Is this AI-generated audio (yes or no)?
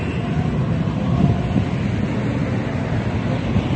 no